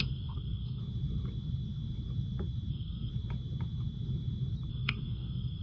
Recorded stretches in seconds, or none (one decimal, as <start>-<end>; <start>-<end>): 0.8-2.7; 3.1-4.7